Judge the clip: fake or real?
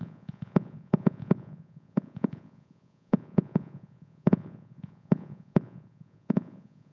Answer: fake